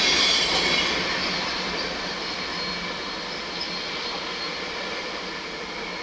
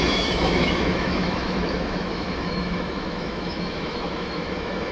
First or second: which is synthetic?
second